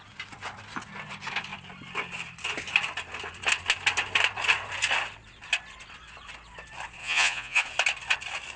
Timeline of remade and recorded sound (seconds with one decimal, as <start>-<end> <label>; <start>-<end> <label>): 0.0-7.0 recorded; 7.0-7.6 remade; 7.6-8.6 recorded